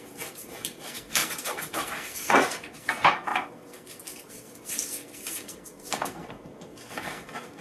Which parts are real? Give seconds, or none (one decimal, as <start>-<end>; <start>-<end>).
none